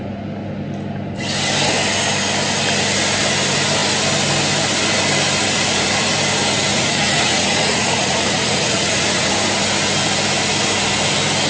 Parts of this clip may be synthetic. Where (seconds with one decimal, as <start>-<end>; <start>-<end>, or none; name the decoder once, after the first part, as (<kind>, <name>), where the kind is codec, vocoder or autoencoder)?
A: 6.7-9.3 (vocoder, Vocos)